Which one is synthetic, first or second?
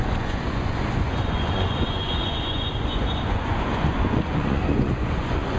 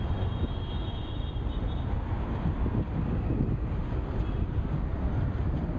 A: first